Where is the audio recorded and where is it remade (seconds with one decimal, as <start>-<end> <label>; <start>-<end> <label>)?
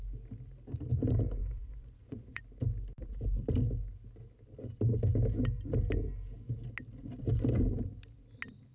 0.0-1.4 recorded; 1.4-2.4 remade; 2.4-8.7 recorded